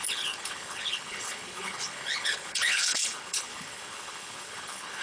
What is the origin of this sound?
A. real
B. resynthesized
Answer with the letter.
B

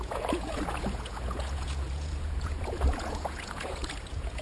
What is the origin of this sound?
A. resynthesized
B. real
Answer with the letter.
A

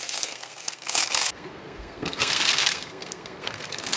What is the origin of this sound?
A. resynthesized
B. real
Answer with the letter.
A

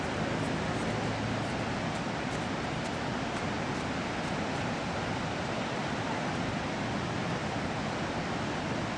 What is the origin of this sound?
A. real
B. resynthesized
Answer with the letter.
A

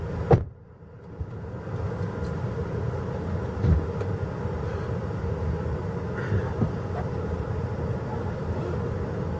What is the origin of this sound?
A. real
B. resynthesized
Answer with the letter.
A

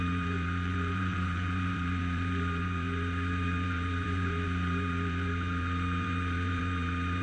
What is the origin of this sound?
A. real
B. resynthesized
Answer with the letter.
B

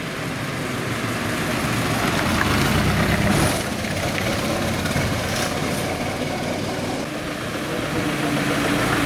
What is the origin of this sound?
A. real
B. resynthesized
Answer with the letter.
A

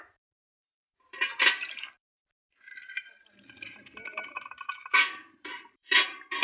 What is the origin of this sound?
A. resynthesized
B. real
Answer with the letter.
A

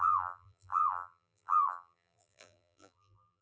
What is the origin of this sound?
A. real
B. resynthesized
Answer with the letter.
B